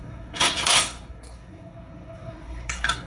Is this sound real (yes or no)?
no